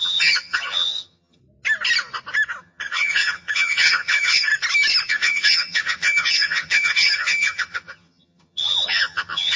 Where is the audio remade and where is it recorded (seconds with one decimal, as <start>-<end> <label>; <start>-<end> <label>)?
0.0-1.4 remade; 1.4-2.6 recorded; 2.6-4.5 remade; 4.5-5.1 recorded; 5.1-9.6 remade